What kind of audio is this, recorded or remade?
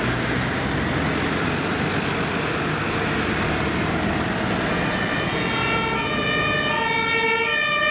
recorded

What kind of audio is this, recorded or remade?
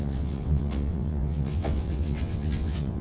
remade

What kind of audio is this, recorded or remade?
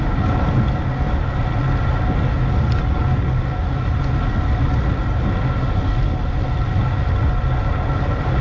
recorded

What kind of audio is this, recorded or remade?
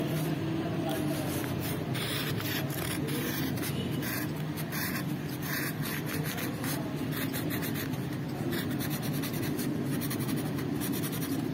recorded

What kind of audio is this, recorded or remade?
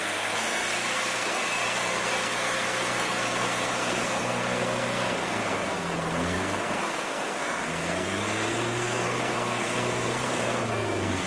remade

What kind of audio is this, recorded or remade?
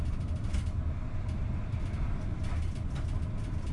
recorded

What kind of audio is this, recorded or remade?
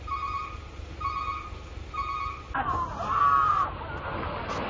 recorded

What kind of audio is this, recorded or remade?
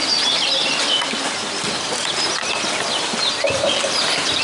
remade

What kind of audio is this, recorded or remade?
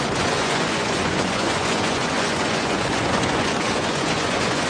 remade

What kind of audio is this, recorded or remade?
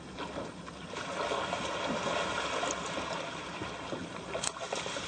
recorded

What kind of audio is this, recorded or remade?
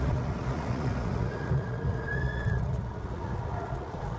remade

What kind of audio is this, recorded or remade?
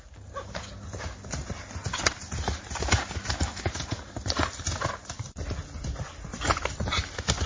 recorded